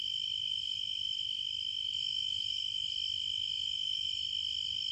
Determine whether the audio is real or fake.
fake